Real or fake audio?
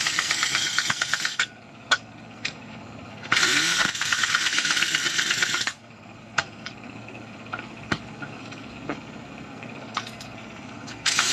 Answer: fake